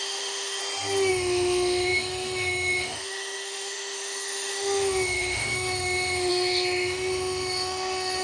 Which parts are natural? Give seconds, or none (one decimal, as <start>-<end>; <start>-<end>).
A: 0.6-1.1